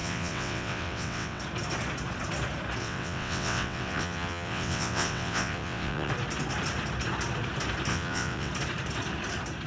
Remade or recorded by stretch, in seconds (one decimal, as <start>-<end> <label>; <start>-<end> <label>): 0.0-1.4 remade; 1.4-2.8 recorded; 2.8-6.1 remade; 6.1-7.9 recorded; 7.9-8.5 remade; 8.5-9.7 recorded